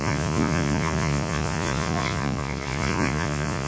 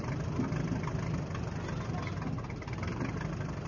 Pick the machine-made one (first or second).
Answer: first